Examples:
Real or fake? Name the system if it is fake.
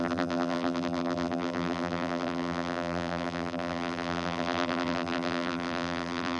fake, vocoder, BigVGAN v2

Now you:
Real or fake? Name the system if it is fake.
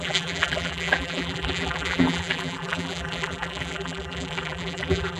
fake, vocoder, BigVGAN v2